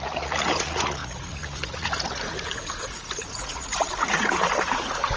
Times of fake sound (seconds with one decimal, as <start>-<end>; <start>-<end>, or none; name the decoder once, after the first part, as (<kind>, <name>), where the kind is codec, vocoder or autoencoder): 0.0-5.2 (vocoder, Vocos)